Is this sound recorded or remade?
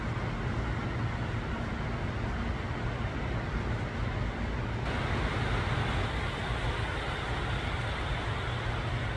recorded